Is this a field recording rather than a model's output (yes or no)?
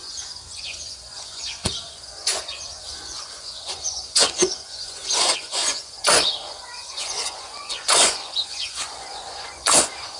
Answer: no